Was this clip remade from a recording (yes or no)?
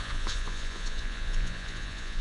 yes